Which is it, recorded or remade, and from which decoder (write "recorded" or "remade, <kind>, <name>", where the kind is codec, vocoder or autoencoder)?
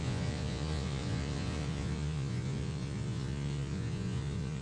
remade, vocoder, Vocos